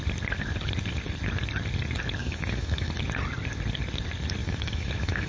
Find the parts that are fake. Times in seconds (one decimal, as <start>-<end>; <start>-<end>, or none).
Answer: 2.2-2.9; 4.4-5.3